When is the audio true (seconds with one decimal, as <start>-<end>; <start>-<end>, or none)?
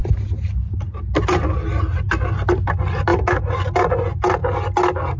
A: 0.0-5.2